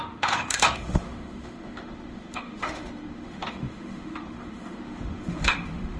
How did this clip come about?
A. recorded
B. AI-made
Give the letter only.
B